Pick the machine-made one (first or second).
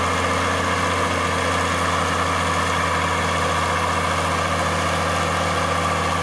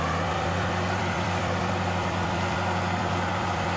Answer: second